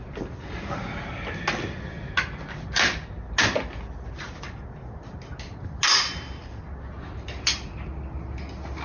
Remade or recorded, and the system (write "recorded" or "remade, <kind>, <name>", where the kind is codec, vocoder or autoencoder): recorded